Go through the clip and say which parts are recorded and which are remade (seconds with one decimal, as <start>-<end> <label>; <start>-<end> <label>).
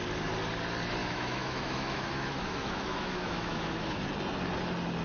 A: 0.0-1.0 recorded; 1.0-4.0 remade; 4.0-5.0 recorded